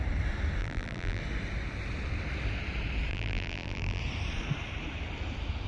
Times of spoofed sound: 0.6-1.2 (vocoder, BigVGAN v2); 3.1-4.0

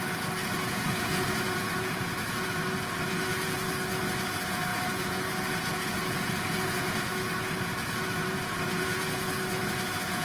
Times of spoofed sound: 0.0-10.2 (vocoder, Vocos)

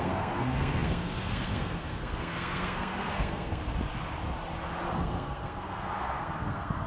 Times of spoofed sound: 0.0-3.6 (codec, SNAC); 5.0-6.9

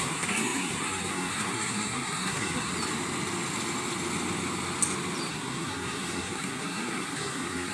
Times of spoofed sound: 0.0-2.7 (codec, SNAC); 5.3-7.7